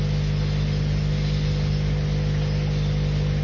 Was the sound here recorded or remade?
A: recorded